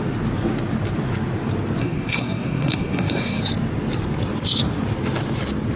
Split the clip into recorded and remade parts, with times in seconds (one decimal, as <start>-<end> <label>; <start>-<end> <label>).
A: 0.0-1.8 recorded; 1.8-3.4 remade; 3.4-5.8 recorded